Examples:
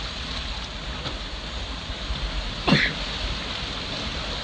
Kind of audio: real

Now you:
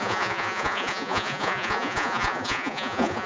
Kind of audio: fake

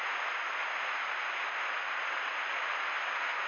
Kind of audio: real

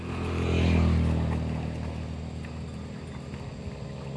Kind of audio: real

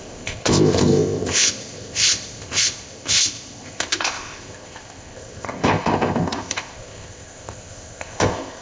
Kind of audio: fake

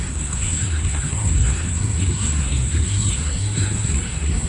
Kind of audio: fake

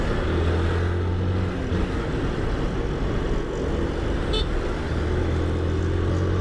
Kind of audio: real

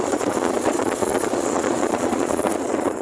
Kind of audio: fake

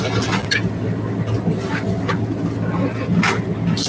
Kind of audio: real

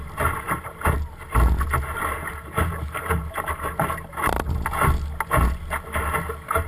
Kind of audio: real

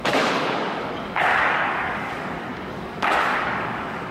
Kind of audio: fake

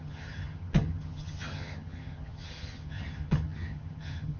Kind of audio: fake